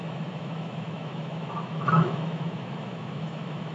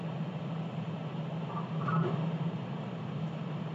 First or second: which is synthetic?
first